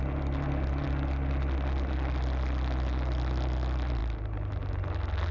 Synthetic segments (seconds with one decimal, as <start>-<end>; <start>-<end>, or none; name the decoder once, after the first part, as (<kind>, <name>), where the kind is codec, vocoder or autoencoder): none